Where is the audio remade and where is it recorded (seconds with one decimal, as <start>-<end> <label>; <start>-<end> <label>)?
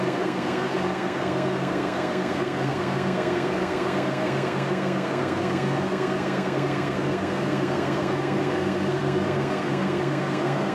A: 0.0-10.7 remade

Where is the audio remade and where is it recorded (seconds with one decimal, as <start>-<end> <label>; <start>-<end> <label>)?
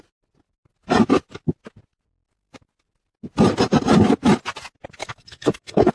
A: 0.0-5.0 recorded; 5.0-5.9 remade